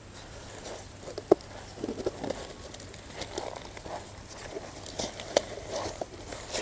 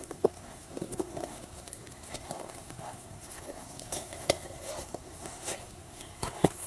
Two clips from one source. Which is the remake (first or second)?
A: second